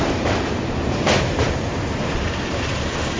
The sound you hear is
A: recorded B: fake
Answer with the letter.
B